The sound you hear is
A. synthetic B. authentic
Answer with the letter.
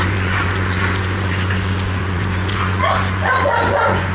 A